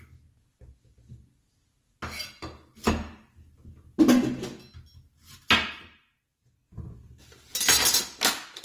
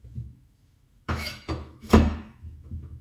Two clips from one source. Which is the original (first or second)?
first